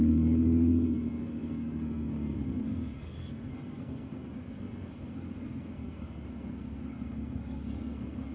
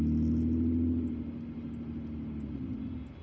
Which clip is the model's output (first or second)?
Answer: first